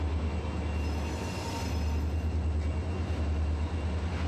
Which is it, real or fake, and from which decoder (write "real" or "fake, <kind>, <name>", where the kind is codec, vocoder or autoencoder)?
real